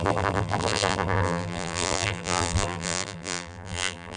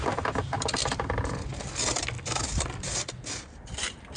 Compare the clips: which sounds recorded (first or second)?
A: second